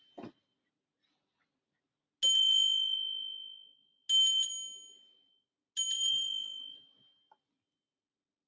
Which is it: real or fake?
real